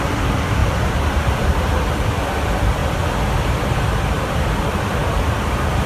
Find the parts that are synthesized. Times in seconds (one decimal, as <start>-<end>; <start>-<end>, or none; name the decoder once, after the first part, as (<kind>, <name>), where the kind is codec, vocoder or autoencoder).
0.0-2.8 (vocoder, BigVGAN v2); 3.8-5.9